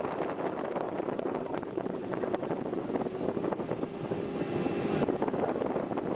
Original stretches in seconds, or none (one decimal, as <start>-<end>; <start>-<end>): 0.0-0.9; 2.9-6.1